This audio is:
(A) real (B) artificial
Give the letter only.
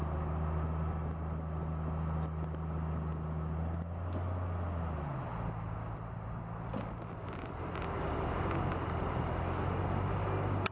A